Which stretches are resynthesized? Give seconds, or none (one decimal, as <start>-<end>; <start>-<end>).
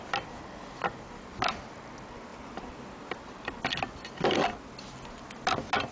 none